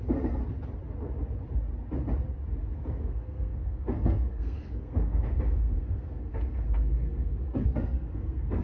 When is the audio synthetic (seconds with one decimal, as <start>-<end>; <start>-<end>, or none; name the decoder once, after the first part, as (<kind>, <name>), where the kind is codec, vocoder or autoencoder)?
0.0-0.4 (codec, SNAC); 2.6-8.6